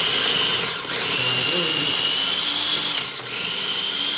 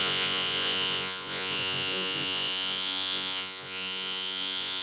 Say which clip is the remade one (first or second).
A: second